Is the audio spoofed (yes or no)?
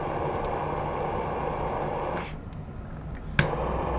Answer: no